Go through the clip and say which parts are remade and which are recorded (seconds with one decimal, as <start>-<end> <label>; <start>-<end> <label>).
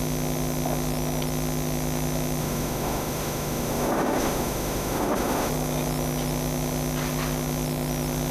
0.0-2.4 recorded; 2.4-5.5 remade; 5.5-8.3 recorded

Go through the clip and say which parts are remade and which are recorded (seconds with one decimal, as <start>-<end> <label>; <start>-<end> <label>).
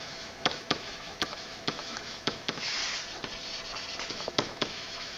0.0-2.8 remade; 2.8-4.1 recorded; 4.1-5.2 remade